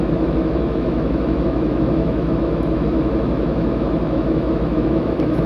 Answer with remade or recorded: remade